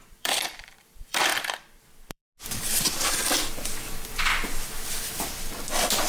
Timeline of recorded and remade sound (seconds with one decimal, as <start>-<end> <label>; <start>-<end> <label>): 0.0-2.2 remade; 2.2-6.1 recorded